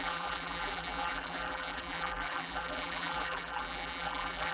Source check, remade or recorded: remade